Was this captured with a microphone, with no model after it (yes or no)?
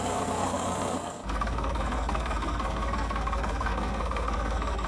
no